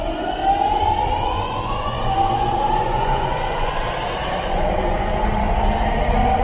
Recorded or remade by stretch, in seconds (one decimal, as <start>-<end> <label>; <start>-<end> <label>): 0.0-0.4 remade; 0.4-1.2 recorded; 1.2-3.8 remade; 3.8-4.4 recorded; 4.4-5.1 remade; 5.1-6.4 recorded